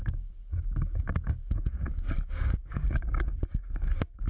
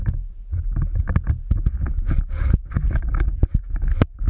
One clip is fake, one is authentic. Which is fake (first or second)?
first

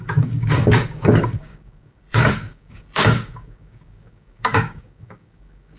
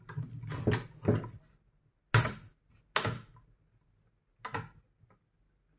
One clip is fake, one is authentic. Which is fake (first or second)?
first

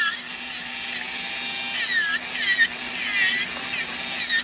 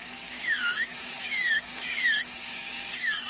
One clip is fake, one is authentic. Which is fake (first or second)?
second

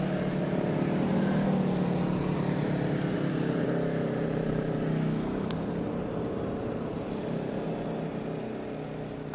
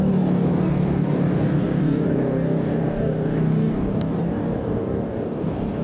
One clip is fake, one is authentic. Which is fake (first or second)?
second